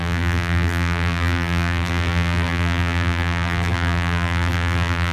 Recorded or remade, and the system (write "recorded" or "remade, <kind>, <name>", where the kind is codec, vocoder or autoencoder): remade, vocoder, BigVGAN v2